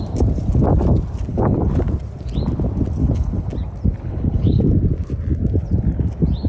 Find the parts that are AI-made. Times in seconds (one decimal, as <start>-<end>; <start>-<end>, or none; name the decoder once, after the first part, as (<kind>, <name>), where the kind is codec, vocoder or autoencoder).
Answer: 1.3-1.8 (codec, HILCodec); 3.0-3.5; 4.0-4.6